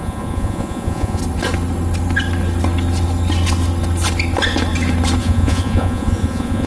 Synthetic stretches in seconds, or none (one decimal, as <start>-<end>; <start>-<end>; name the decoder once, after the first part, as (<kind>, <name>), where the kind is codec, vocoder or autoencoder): 0.0-1.2 (vocoder, Vocos); 5.2-6.7